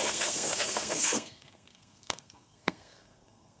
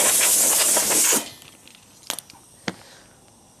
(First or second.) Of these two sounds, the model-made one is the first